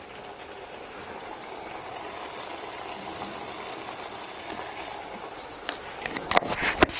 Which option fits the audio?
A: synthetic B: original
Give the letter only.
B